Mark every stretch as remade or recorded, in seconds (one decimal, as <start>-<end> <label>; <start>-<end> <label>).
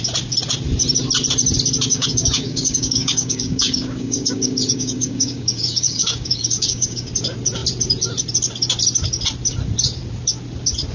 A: 0.0-1.9 recorded; 1.9-7.1 remade; 7.1-10.9 recorded